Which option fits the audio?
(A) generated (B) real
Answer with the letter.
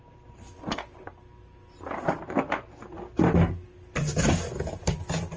B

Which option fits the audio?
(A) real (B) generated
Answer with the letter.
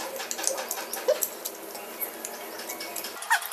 A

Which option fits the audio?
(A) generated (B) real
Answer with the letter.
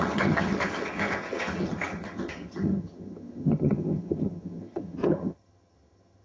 A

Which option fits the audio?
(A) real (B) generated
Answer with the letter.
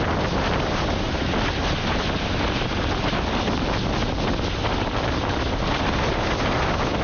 A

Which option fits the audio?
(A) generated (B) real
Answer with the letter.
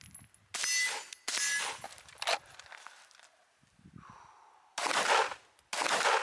B